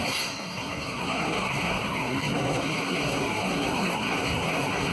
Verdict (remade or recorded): remade